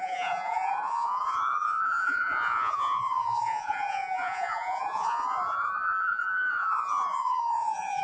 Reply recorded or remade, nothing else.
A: remade